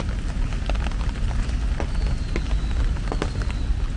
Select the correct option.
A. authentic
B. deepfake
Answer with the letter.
A